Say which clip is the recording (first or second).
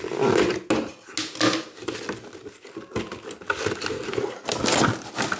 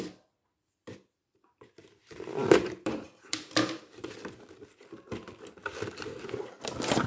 first